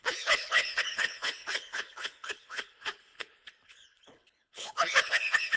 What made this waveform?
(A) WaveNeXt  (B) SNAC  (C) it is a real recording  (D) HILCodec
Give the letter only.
D